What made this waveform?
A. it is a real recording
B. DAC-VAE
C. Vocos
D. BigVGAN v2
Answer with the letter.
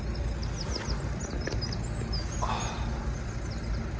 A